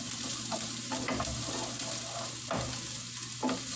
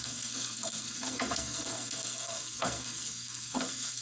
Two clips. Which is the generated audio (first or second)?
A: second